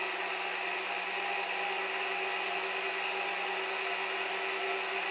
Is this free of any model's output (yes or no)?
yes